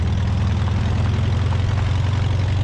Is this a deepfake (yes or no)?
no